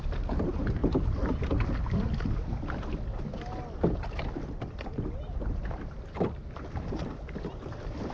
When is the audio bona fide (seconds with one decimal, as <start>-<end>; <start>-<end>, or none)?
0.0-8.1